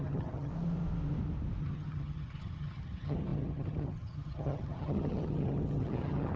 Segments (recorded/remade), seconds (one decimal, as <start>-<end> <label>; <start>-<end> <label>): 0.0-0.5 remade; 0.5-1.6 recorded; 1.6-6.4 remade